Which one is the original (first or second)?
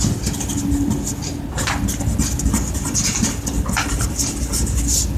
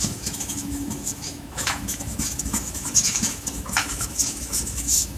first